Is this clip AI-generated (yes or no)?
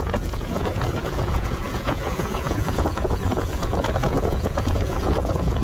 yes